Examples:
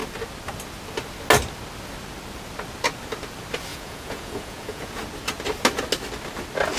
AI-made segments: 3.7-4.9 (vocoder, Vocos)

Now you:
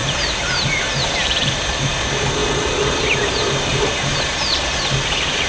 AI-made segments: 0.0-2.4 (vocoder, BigVGAN v2); 3.1-5.5

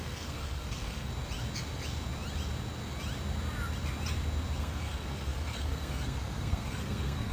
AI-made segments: 0.0-1.1 (codec, SNAC); 4.6-7.3

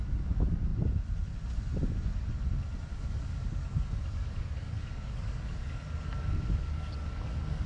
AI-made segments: 2.9-7.7 (codec, DAC)

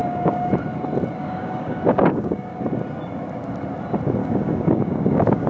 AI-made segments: 0.0-0.5 (codec, DAC); 1.2-2.6; 4.2-5.5

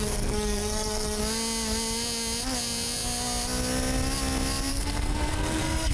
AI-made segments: 0.0-1.2 (codec, SNAC); 4.7-5.9